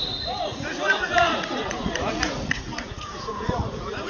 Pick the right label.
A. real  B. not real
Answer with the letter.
B